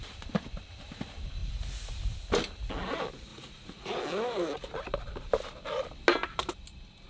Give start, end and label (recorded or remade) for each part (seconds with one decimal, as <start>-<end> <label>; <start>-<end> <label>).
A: 0.0-1.4 recorded; 1.4-1.9 remade; 1.9-3.3 recorded; 3.3-4.0 remade; 4.0-7.1 recorded